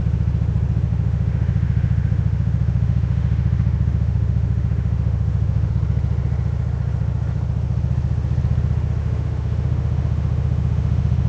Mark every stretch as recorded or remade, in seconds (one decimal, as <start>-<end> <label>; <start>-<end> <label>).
0.0-0.9 recorded; 0.9-5.7 remade; 5.7-9.0 recorded; 9.0-11.3 remade